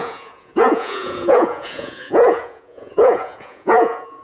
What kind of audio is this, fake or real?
fake